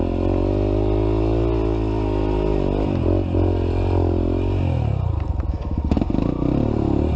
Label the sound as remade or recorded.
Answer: recorded